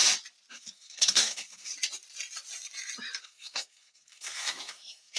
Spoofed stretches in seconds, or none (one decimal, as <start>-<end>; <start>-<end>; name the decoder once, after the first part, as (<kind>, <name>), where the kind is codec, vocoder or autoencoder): 0.5-1.7 (codec, SNAC); 3.2-5.2